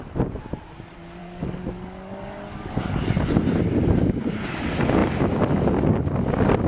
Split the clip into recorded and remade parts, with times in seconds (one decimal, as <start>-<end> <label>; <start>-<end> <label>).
0.0-1.2 recorded; 1.2-2.7 remade; 2.7-6.7 recorded